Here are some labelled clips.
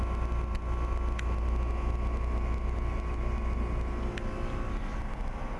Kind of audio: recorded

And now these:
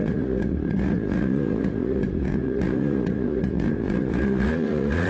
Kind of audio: remade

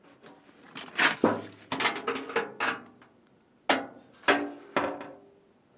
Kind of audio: recorded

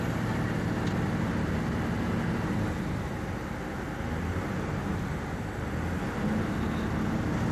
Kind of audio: recorded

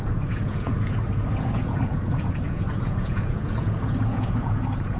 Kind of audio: remade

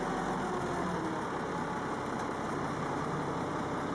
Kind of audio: recorded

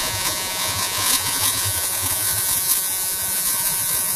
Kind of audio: remade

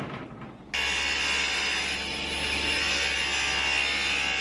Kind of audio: recorded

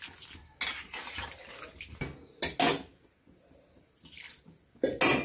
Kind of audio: recorded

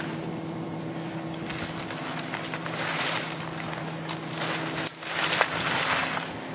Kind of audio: recorded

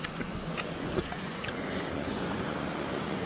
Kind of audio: remade